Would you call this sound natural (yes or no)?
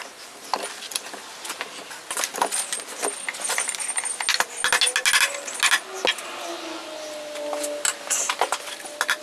yes